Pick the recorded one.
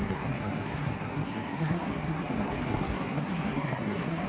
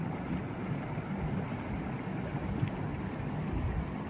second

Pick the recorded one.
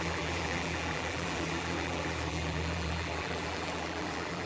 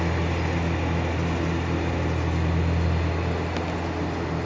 second